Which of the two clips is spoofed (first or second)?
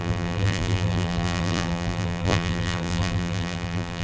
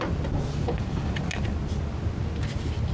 first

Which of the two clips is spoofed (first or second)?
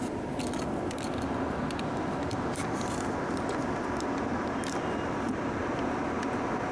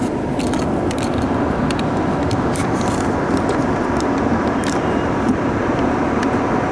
second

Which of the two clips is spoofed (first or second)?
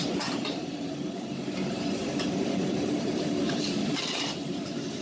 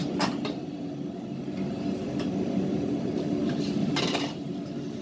first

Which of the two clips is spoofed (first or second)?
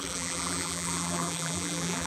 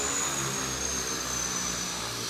first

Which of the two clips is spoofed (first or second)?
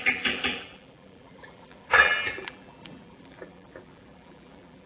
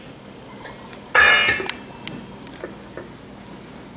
first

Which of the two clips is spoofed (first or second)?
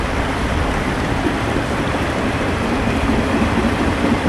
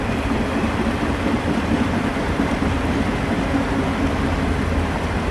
first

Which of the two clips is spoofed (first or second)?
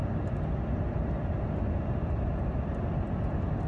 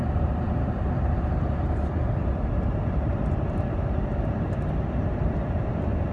second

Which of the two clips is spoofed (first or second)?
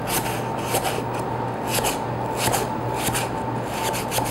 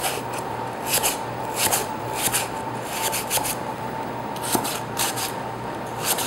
second